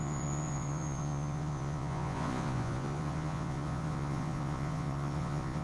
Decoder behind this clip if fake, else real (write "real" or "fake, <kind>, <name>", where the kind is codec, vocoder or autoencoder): fake, vocoder, Vocos